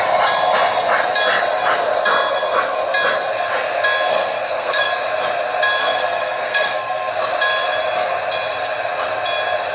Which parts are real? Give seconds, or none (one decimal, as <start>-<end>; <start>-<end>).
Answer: 0.0-4.1; 4.9-5.8; 7.1-9.7